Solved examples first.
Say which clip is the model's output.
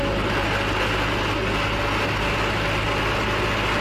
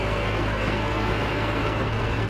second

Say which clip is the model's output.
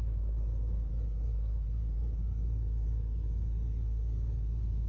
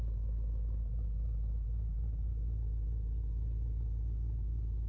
first